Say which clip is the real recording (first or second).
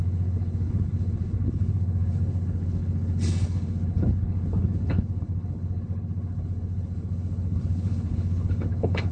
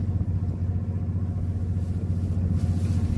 second